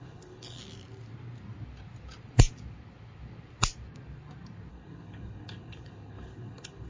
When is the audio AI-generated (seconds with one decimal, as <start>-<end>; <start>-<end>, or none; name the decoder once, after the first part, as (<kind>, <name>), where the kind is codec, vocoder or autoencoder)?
0.0-0.6 (codec, HILCodec); 4.7-6.9